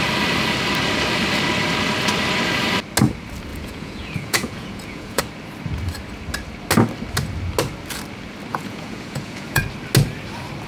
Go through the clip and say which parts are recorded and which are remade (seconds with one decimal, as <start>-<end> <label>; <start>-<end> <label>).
0.0-3.5 recorded; 3.5-5.2 remade; 5.2-8.5 recorded; 8.5-9.6 remade; 9.6-10.7 recorded